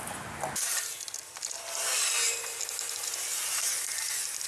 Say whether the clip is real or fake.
real